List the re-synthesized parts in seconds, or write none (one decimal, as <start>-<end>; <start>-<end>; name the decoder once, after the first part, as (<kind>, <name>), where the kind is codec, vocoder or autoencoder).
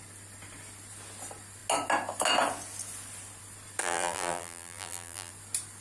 3.8-5.3 (vocoder, BigVGAN v2)